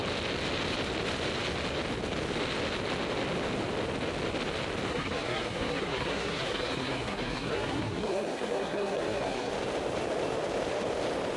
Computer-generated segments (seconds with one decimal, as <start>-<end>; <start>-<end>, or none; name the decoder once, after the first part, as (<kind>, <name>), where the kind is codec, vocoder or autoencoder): 4.9-9.5 (codec, SNAC)